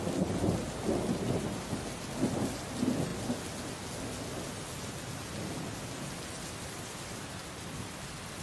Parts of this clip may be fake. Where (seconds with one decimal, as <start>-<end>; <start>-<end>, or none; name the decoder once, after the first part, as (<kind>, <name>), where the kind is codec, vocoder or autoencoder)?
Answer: none